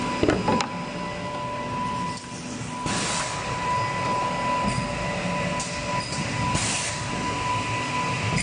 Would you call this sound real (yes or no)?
yes